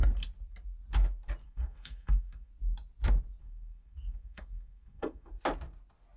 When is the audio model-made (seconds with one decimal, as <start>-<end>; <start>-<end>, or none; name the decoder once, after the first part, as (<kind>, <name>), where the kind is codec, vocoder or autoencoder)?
1.4-2.5 (codec, SNAC); 3.4-5.3